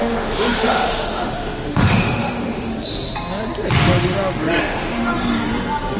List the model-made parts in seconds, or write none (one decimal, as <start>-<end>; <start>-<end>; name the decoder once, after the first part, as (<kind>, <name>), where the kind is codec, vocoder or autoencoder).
0.0-2.7 (autoencoder, DAC-VAE); 4.6-5.1